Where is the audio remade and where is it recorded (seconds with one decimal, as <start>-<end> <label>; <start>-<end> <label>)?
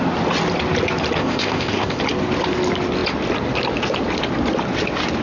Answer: 0.0-1.2 recorded; 1.2-2.0 remade; 2.0-5.2 recorded